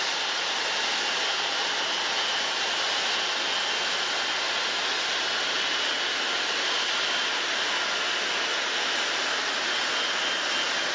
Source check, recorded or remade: recorded